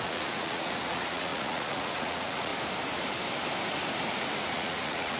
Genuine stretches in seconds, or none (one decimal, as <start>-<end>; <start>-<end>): 2.5-4.5